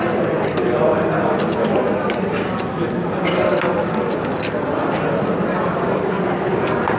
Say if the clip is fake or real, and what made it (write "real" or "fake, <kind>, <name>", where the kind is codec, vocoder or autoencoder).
real